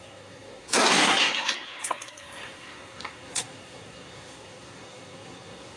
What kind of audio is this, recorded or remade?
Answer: remade